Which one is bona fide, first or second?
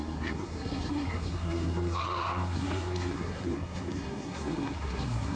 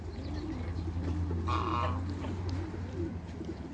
second